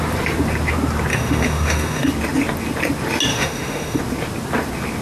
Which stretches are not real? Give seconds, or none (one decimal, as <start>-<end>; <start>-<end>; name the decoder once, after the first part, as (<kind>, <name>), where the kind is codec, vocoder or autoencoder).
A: 1.1-2.1 (autoencoder, DAC-VAE); 3.3-4.0